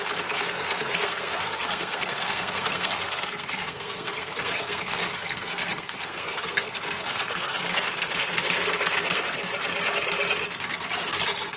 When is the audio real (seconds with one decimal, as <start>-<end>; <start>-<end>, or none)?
9.5-11.6